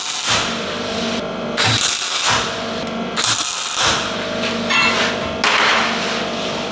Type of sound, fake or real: real